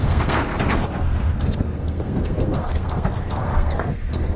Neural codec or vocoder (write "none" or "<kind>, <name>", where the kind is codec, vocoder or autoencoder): codec, SNAC